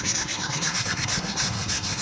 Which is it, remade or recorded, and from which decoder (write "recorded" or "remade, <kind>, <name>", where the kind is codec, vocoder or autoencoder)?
remade, codec, SNAC